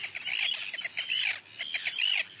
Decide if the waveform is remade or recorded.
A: recorded